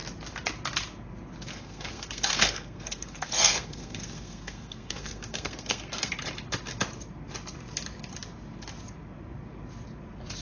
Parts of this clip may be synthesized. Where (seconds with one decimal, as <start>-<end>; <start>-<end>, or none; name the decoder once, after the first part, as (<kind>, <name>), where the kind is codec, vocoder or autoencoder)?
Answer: 1.5-6.1 (codec, SNAC)